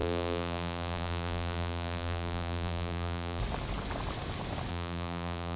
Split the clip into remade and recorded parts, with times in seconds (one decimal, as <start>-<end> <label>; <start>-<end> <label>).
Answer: 0.0-3.4 remade; 3.4-4.7 recorded; 4.7-5.6 remade